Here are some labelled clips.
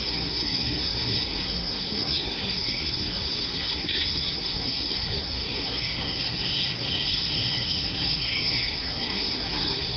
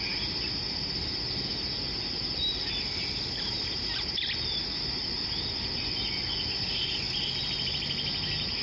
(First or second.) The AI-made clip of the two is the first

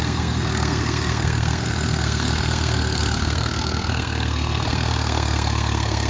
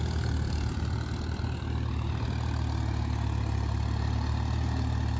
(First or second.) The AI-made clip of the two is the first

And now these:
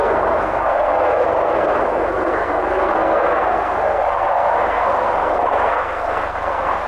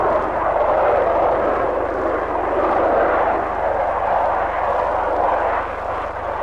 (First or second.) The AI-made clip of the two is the first